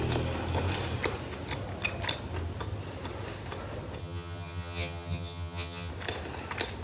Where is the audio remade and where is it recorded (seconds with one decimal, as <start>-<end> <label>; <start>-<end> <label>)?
0.0-4.0 recorded; 4.0-5.9 remade; 5.9-6.8 recorded